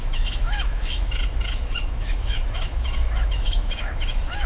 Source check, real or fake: fake